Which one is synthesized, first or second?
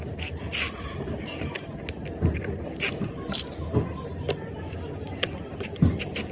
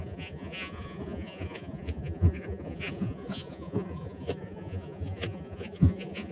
second